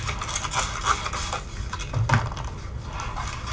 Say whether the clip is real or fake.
real